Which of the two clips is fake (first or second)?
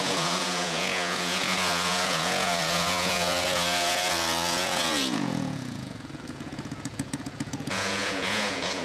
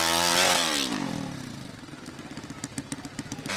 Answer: first